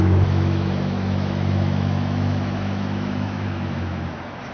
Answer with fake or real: fake